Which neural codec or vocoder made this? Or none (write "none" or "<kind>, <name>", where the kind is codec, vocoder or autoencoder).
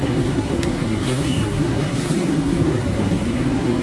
codec, SNAC